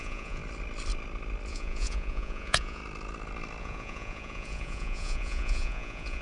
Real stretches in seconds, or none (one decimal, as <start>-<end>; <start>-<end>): 0.4-1.5; 2.8-3.6